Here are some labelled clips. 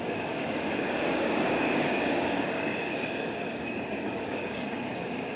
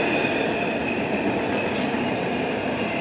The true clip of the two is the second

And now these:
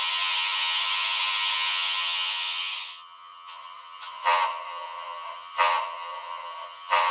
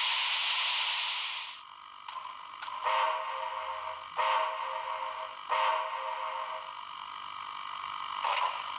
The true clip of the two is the second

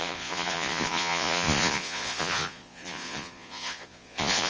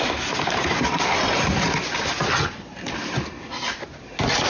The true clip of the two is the second